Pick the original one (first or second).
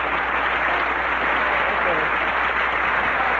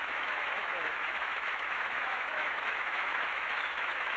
first